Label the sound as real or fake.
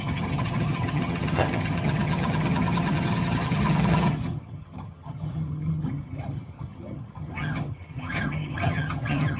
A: fake